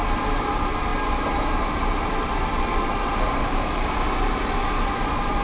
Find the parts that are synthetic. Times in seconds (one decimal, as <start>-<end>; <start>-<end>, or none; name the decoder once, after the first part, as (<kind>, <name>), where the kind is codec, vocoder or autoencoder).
none